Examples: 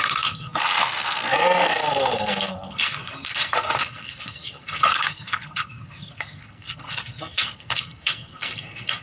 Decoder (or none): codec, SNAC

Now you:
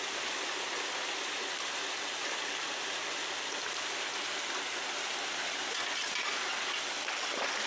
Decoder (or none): none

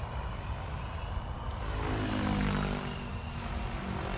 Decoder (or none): none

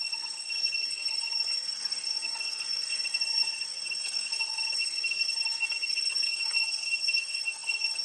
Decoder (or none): codec, SNAC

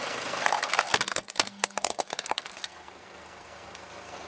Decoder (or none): codec, SNAC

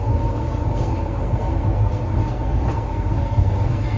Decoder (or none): codec, SNAC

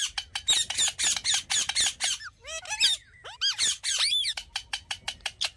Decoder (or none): none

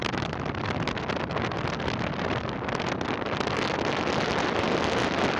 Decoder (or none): none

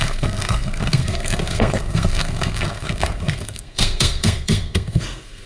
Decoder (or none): codec, SNAC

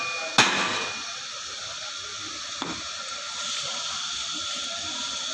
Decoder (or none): none